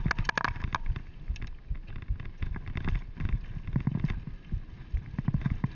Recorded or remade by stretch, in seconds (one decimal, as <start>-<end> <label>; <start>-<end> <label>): 0.0-5.8 recorded